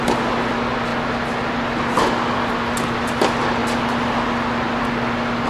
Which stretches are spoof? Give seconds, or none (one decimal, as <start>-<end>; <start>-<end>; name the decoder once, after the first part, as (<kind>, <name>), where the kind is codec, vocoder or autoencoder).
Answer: none

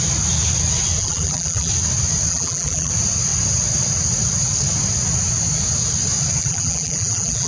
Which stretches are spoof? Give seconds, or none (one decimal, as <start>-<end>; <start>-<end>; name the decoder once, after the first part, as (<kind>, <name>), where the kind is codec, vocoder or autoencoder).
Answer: 1.0-1.7 (vocoder, BigVGAN v2); 2.3-2.9; 6.4-7.5

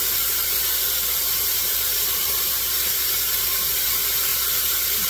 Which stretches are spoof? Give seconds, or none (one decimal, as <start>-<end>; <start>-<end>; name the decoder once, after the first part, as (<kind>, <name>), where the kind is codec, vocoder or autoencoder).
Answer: 1.4-3.1 (vocoder, BigVGAN v2)

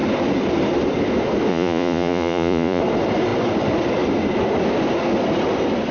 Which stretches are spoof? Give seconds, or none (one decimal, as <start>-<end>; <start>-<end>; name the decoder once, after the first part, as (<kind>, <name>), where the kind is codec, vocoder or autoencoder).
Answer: 1.5-2.8 (vocoder, Vocos)